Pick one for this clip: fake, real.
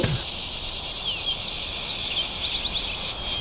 real